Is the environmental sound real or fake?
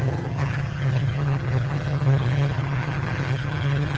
fake